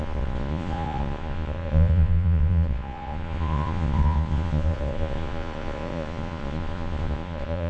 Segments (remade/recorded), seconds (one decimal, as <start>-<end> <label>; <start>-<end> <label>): 0.0-7.7 remade